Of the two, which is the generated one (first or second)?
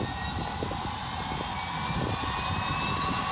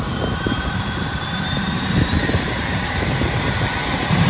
second